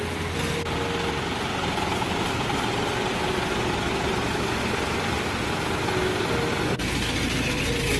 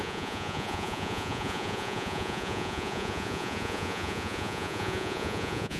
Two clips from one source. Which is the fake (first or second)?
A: second